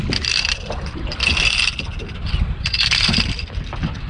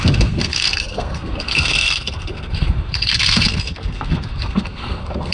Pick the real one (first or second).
first